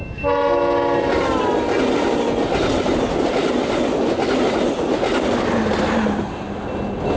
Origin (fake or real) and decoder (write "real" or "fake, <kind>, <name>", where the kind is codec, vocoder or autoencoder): real